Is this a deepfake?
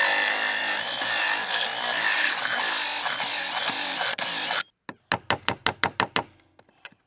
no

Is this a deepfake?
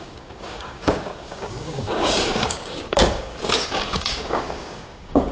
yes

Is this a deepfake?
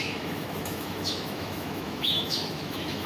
yes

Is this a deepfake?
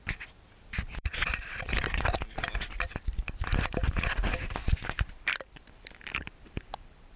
yes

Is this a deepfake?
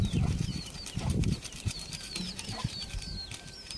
yes